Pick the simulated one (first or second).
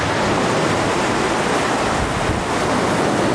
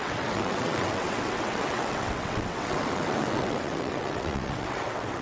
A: second